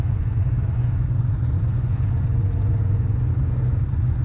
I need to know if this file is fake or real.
fake